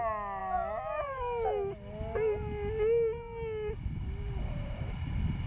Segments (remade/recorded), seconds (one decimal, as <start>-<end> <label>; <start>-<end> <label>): 0.0-4.4 recorded; 4.4-5.0 remade; 5.0-5.5 recorded